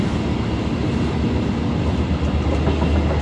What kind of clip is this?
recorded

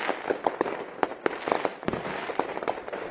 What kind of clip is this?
recorded